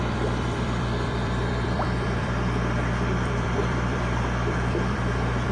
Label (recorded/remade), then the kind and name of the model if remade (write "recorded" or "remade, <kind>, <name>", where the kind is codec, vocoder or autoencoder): remade, vocoder, BigVGAN v2